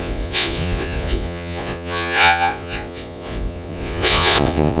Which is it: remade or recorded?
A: remade